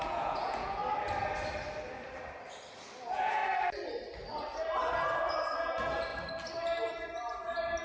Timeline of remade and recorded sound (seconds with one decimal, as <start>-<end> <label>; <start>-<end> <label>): 0.0-0.8 remade; 0.8-3.0 recorded; 3.0-3.4 remade; 3.4-5.6 recorded; 5.6-6.1 remade; 6.1-7.8 recorded